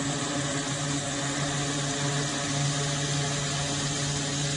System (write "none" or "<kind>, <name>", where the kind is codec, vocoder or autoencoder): none